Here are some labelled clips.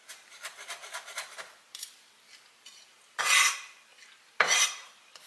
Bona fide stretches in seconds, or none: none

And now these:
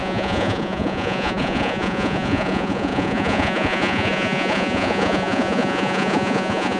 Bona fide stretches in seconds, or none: none

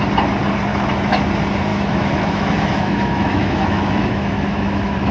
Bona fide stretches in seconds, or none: 0.0-0.7; 1.2-1.7